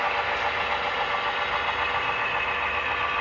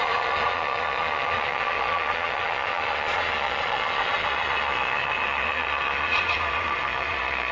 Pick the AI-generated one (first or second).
second